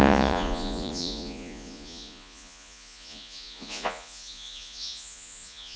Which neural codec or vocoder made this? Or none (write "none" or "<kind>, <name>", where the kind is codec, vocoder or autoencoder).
vocoder, Vocos